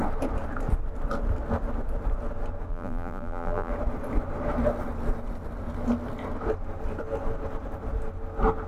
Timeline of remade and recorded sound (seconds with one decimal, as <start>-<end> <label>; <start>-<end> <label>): 0.0-2.7 recorded; 2.7-3.7 remade; 3.7-8.7 recorded